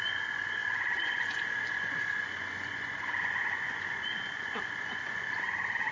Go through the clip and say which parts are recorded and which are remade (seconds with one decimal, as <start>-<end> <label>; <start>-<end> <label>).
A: 0.0-5.9 remade